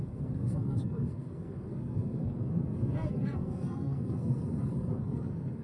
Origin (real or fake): fake